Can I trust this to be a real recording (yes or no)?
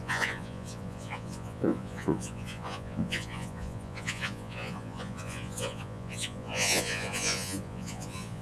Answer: no